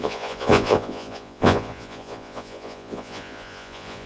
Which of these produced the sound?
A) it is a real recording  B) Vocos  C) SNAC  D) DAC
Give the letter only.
B